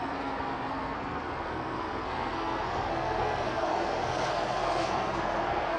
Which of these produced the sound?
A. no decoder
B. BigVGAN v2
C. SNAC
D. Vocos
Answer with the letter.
C